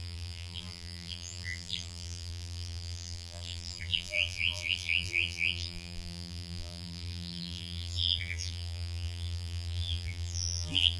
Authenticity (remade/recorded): remade